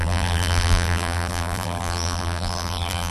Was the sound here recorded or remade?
remade